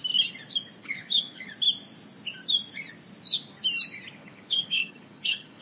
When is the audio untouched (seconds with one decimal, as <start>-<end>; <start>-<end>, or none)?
0.0-0.8; 1.5-4.2